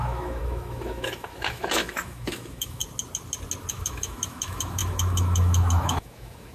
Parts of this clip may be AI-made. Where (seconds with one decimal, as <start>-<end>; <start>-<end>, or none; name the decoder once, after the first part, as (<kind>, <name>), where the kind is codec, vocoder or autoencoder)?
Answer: 0.0-2.8 (autoencoder, DAC-VAE); 3.7-6.5